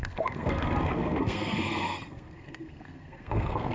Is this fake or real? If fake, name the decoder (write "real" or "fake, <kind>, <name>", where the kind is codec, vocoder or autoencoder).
fake, codec, SNAC